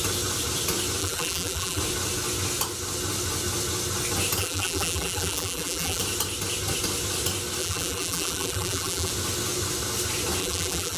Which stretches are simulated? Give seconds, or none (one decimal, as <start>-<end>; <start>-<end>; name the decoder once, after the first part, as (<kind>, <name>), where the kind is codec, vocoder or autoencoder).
1.0-1.8 (vocoder, BigVGAN v2); 4.4-6.0; 7.6-9.1; 10.4-11.0